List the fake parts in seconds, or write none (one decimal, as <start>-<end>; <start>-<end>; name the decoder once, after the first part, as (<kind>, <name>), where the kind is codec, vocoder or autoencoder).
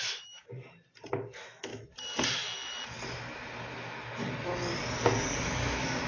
0.0-0.5 (autoencoder, DAC-VAE); 1.1-1.7; 5.4-6.1